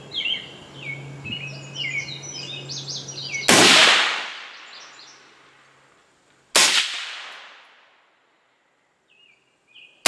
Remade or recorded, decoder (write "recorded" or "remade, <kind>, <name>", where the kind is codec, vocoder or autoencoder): recorded